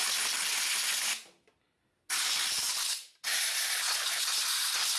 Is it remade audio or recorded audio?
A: recorded